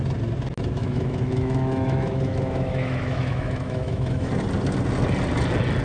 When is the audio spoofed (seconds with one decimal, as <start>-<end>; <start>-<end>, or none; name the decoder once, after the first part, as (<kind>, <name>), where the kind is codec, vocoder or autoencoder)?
0.8-4.3 (autoencoder, DAC-VAE)